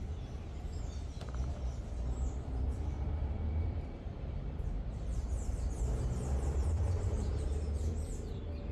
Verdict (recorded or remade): remade